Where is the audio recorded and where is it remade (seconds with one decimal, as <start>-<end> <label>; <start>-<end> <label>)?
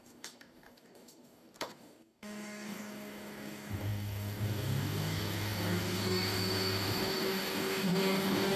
0.0-8.6 remade